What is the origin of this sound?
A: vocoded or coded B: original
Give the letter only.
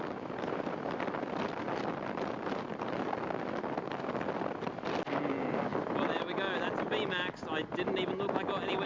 B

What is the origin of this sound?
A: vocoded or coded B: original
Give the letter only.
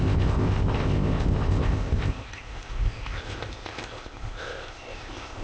A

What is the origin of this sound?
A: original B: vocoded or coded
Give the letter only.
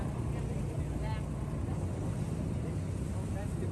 A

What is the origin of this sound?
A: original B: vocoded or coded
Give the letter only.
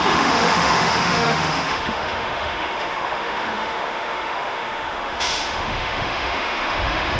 B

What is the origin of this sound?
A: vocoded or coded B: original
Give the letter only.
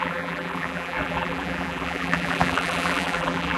A